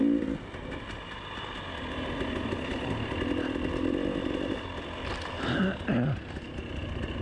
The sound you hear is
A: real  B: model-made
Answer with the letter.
A